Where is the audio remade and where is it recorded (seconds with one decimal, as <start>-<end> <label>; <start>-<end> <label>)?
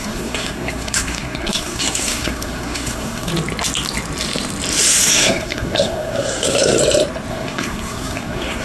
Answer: 0.0-3.3 remade; 3.3-5.1 recorded; 5.1-6.8 remade; 6.8-7.3 recorded; 7.3-8.6 remade